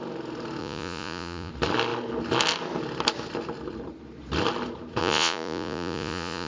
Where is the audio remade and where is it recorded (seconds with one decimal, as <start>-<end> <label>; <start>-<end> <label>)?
0.0-0.6 recorded; 0.6-1.5 remade; 1.5-5.0 recorded; 5.0-6.5 remade

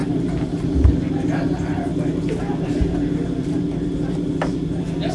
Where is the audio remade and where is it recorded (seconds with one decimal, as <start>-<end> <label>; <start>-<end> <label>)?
0.0-5.1 recorded

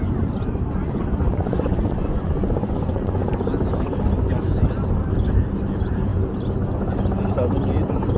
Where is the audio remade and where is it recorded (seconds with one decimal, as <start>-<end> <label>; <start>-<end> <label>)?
0.0-0.7 recorded; 0.7-3.3 remade; 3.3-8.2 recorded

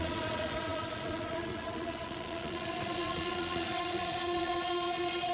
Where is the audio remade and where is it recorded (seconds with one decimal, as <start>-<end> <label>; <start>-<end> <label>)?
0.0-5.3 remade

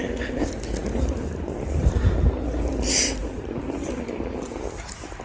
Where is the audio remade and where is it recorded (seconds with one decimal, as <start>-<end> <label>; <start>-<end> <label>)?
0.0-5.2 recorded